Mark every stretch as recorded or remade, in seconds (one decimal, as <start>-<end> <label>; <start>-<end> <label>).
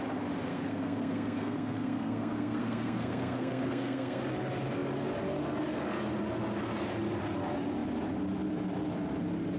0.0-0.5 recorded; 0.5-4.2 remade; 4.2-9.6 recorded